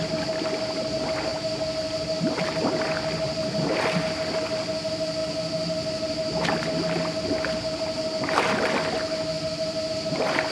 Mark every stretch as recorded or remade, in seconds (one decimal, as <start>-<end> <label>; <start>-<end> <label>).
0.0-10.5 recorded